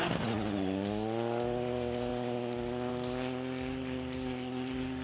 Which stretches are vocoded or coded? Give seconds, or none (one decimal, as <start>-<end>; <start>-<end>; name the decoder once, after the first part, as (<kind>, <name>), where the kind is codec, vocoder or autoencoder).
none